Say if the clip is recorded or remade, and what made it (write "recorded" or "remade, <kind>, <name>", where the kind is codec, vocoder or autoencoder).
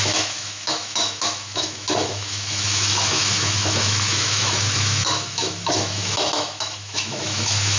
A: remade, autoencoder, DAC-VAE